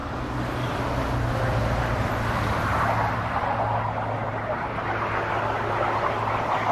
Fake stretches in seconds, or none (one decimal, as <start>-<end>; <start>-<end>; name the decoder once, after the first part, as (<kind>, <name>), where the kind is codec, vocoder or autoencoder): none